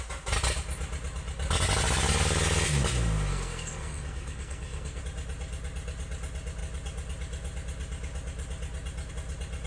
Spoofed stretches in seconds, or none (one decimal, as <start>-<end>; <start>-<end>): 3.3-5.0